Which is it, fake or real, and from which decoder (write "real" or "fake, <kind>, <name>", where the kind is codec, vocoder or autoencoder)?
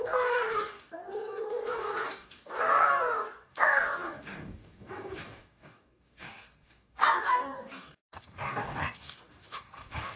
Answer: fake, codec, DAC